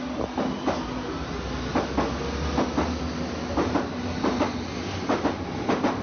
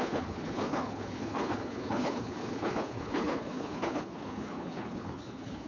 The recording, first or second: first